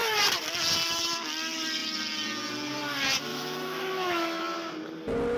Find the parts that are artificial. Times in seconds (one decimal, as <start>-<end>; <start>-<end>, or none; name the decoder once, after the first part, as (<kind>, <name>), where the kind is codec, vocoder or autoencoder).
3.3-4.4 (autoencoder, DAC-VAE)